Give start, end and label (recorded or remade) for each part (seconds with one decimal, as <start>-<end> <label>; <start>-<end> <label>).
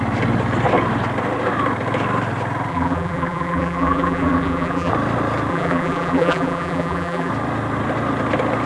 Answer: 0.0-2.7 recorded; 2.7-4.9 remade; 4.9-5.5 recorded; 5.5-7.3 remade; 7.3-8.7 recorded